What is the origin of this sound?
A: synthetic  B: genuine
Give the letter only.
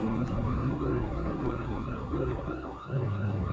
A